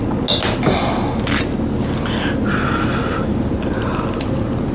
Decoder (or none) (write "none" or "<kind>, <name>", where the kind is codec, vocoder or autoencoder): none